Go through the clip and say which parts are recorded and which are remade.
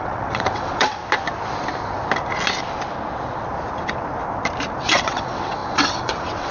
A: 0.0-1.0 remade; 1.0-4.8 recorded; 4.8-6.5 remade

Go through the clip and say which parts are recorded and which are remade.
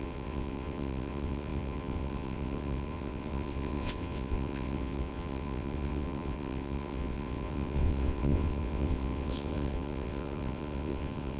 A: 0.0-11.4 remade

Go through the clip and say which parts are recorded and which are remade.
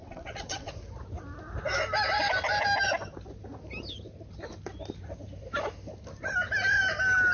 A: 0.0-0.7 remade; 0.7-7.3 recorded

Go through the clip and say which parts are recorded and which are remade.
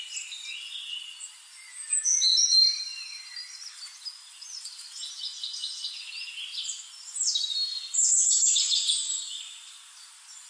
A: 0.0-10.5 recorded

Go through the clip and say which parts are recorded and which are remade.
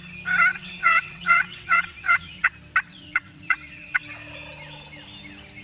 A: 0.0-0.5 recorded; 0.5-2.5 remade; 2.5-2.9 recorded; 2.9-4.0 remade; 4.0-5.6 recorded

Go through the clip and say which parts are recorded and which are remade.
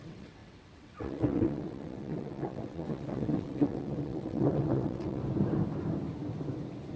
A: 0.0-5.2 remade; 5.2-7.0 recorded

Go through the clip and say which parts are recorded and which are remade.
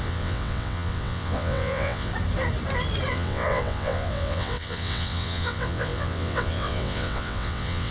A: 0.0-2.1 remade; 2.1-3.1 recorded; 3.1-7.9 remade